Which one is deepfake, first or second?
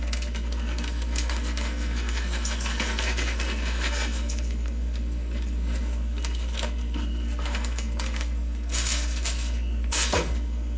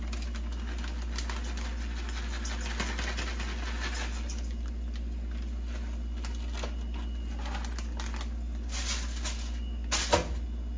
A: first